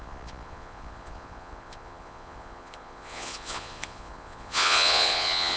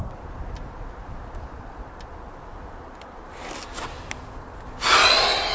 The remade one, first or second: first